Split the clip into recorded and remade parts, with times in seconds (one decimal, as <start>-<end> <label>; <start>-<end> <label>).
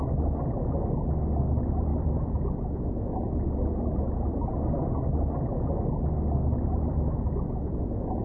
0.0-1.9 recorded; 1.9-2.8 remade; 2.8-8.2 recorded